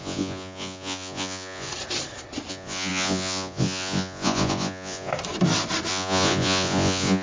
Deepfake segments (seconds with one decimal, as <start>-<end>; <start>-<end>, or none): 0.0-1.7; 2.5-5.1; 5.9-7.2